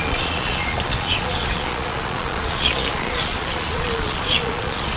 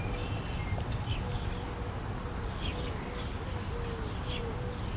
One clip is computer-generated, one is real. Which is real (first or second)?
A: second